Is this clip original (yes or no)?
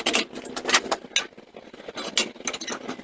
yes